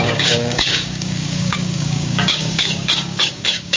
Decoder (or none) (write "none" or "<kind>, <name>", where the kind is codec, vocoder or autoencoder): codec, DAC